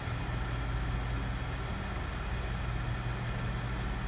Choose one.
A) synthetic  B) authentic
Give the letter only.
B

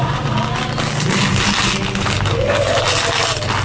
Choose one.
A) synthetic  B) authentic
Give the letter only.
B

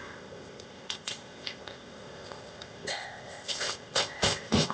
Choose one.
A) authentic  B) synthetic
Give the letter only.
B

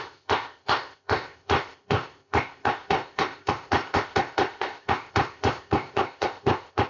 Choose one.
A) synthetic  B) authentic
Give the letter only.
A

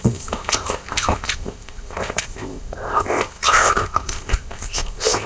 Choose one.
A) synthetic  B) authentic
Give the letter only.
A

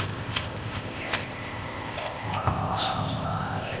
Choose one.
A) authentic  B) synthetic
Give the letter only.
B